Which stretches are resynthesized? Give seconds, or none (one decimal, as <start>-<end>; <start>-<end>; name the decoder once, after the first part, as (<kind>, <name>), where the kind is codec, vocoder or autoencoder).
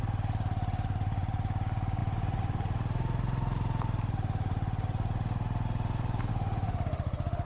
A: none